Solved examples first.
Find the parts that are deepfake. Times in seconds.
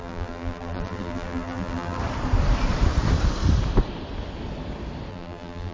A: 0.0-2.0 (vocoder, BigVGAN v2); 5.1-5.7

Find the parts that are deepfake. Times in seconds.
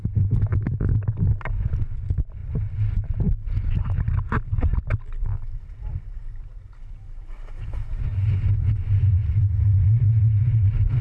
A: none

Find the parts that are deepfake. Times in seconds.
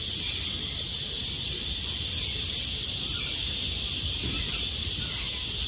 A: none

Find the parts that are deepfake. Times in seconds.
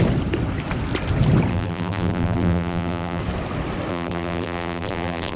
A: 1.5-3.2 (vocoder, BigVGAN v2); 3.9-5.4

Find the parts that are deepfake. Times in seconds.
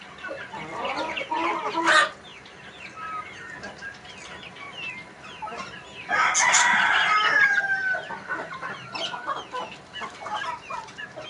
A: none